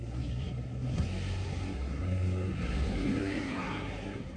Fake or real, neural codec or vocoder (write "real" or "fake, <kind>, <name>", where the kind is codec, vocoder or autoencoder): fake, codec, SNAC